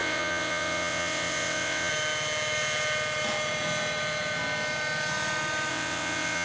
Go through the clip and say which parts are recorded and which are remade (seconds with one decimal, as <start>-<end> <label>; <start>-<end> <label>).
0.0-1.9 remade; 1.9-5.7 recorded; 5.7-6.4 remade